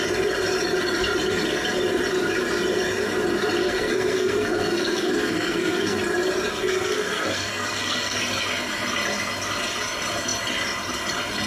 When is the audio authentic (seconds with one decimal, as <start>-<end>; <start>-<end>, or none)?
0.0-3.6; 6.0-6.5; 8.2-11.5